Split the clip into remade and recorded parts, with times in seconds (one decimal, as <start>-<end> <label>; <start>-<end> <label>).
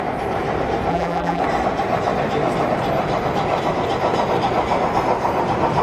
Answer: 0.0-0.9 recorded; 0.9-1.4 remade; 1.4-5.8 recorded